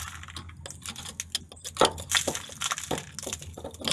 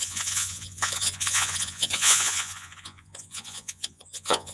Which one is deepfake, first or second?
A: second